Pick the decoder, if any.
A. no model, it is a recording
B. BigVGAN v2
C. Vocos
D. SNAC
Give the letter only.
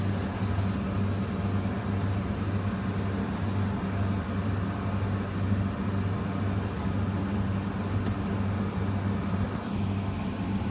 A